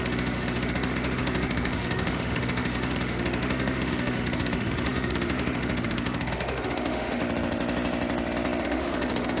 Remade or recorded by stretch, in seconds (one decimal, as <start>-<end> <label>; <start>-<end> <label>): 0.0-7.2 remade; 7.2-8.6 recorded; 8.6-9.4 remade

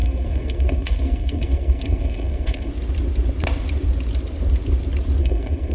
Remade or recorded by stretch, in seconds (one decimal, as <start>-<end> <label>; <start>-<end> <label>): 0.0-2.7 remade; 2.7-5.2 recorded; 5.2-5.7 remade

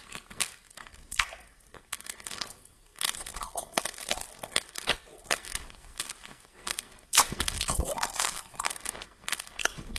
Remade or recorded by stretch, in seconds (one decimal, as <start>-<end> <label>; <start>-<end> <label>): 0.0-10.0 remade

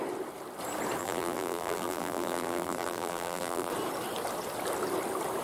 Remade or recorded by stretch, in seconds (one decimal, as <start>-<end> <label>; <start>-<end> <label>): 0.0-1.0 recorded; 1.0-3.7 remade; 3.7-5.4 recorded

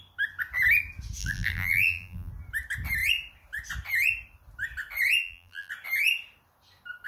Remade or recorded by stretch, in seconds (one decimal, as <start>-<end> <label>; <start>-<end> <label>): 0.0-1.2 recorded; 1.2-2.3 remade; 2.3-5.2 recorded; 5.2-5.7 remade; 5.7-7.1 recorded